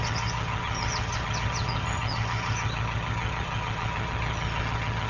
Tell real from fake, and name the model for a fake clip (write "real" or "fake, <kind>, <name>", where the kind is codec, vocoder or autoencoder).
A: fake, vocoder, HiFi-GAN